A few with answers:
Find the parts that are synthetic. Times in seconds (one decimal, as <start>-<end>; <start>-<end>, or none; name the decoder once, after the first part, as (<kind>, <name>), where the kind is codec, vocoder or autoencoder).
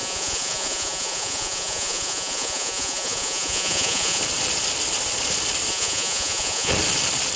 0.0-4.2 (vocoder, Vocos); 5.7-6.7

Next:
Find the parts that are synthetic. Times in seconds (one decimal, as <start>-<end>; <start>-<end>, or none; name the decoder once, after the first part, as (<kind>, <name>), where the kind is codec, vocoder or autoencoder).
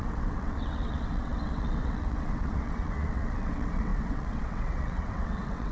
0.0-5.7 (vocoder, WaveNeXt)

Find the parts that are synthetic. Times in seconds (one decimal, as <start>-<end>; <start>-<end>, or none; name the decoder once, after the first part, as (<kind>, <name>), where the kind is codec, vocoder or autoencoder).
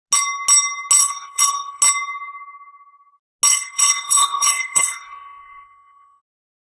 1.0-1.8 (codec, SNAC); 3.5-6.2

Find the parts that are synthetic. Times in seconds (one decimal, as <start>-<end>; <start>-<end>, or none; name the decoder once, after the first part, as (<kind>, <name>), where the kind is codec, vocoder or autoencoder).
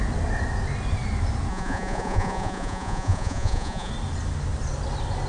1.5-3.9 (vocoder, Vocos)